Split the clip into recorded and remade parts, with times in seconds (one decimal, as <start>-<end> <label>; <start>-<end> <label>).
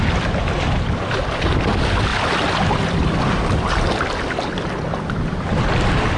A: 0.0-6.2 recorded